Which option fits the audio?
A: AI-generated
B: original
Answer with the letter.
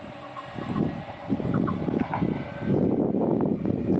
B